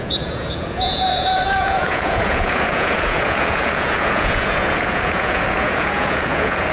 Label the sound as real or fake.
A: fake